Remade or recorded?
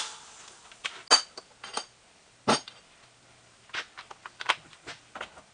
recorded